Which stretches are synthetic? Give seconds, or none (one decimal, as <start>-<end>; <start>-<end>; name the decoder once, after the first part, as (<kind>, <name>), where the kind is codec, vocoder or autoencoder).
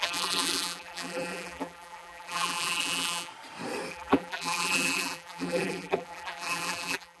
0.0-3.3 (vocoder, BigVGAN v2); 3.9-7.2